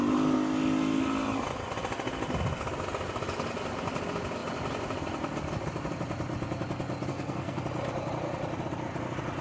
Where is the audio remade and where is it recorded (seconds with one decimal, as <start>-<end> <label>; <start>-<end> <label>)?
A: 0.0-7.1 recorded; 7.1-7.6 remade; 7.6-9.4 recorded